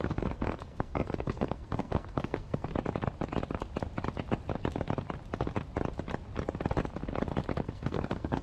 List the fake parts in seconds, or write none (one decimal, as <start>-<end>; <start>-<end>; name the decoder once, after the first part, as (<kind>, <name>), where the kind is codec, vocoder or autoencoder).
0.0-2.7 (codec, SNAC); 7.6-8.4

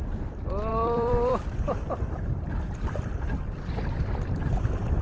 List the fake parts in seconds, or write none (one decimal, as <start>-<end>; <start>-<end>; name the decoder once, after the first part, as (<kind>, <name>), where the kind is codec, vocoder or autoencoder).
0.7-3.7 (vocoder, BigVGAN v2)

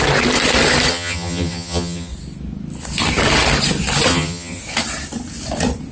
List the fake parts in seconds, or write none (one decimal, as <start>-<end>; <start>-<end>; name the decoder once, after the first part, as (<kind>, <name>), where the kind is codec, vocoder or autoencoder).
0.9-2.1 (vocoder, HiFi-GAN); 4.1-4.6

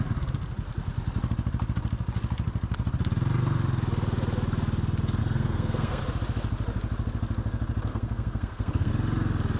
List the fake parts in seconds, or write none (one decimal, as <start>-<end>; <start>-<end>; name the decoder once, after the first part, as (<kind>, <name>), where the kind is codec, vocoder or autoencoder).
5.2-6.0 (codec, SNAC); 7.9-8.9

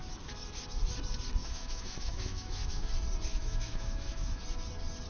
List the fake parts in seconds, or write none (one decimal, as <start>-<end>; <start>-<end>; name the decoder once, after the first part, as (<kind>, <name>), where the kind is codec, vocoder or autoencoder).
1.4-2.9 (autoencoder, DAC-VAE); 3.3-4.4